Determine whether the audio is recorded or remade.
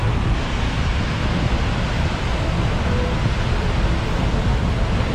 remade